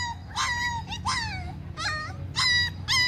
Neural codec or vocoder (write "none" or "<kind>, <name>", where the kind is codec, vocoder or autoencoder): none